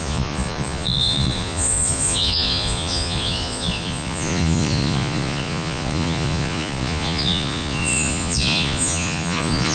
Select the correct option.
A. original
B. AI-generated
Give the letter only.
B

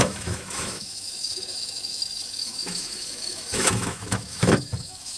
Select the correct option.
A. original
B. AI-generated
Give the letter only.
B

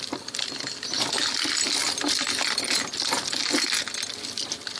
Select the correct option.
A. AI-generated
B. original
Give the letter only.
B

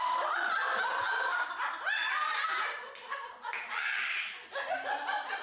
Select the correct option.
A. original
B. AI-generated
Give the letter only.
A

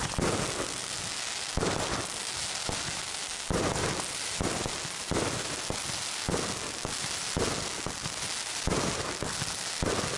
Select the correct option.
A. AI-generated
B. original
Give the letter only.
B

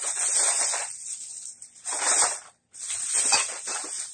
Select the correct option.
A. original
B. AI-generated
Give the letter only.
A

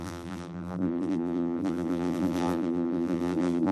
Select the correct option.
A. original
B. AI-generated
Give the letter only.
B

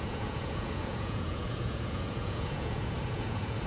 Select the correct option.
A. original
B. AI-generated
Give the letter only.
B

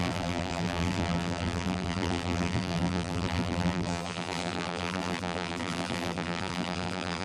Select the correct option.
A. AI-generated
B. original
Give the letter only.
A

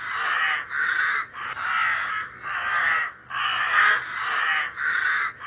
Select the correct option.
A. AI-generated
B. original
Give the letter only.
B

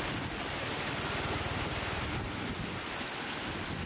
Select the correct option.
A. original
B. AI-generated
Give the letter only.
A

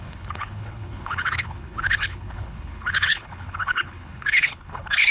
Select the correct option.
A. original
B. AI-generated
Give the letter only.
B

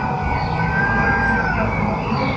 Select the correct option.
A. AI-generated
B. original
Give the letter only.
B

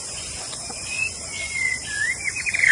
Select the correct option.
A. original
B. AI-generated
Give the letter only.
B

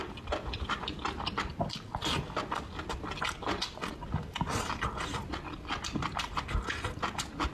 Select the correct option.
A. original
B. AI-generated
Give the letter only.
A